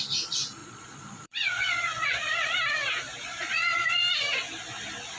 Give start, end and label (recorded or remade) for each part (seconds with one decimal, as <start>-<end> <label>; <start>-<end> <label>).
0.0-0.6 recorded; 0.6-2.5 remade; 2.5-3.2 recorded; 3.2-4.0 remade; 4.0-5.2 recorded